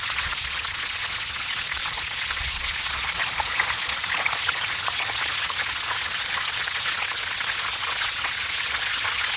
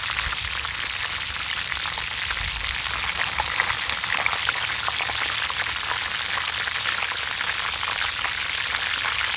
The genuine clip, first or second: second